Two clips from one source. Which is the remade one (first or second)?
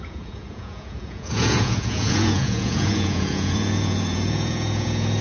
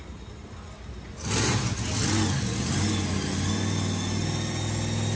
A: first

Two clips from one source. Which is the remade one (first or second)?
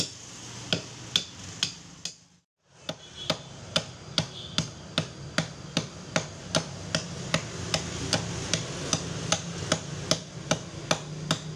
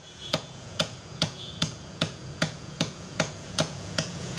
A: second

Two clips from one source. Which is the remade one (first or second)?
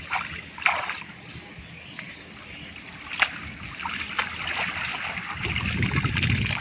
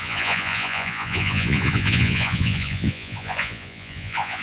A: second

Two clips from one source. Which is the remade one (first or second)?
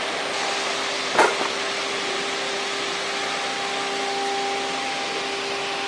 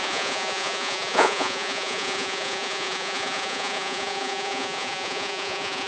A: second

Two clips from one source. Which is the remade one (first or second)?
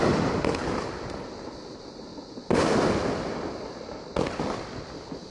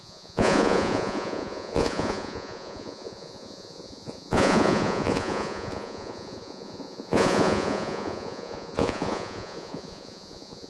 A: second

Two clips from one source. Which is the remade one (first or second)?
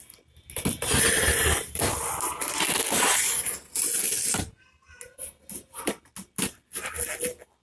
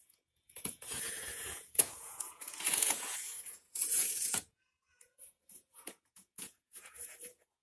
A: second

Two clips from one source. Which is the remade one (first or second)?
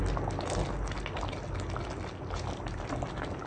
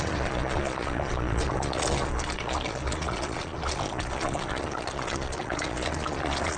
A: second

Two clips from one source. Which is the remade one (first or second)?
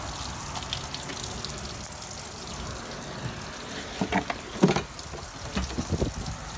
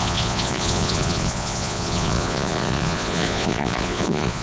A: second